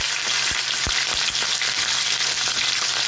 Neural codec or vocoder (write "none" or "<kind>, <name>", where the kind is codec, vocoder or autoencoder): none